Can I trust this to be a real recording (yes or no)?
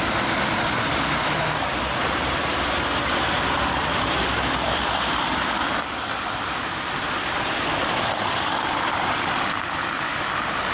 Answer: no